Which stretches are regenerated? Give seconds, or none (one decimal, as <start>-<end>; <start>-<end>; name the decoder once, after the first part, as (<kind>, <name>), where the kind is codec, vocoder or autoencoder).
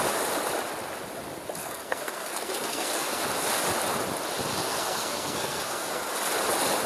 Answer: 1.6-3.2 (codec, SNAC); 4.6-6.1